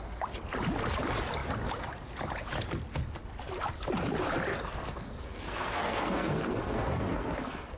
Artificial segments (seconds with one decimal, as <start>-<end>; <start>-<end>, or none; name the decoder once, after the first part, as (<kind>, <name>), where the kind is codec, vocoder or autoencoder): 4.5-7.8 (codec, SNAC)